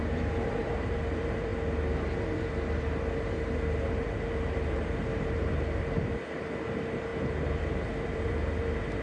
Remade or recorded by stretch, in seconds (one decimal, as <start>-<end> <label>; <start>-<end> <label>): 0.0-1.5 remade; 1.5-3.9 recorded; 3.9-9.0 remade